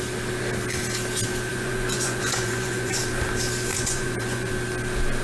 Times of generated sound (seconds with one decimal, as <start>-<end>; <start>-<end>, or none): 1.5-3.0; 3.7-4.5